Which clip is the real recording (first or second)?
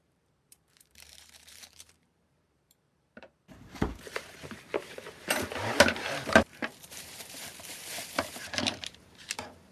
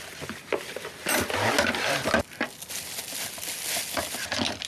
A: second